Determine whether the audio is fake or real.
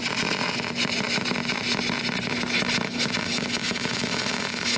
real